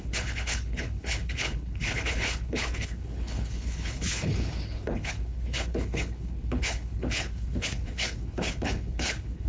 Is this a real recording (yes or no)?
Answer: no